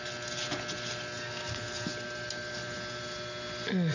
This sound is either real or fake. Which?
real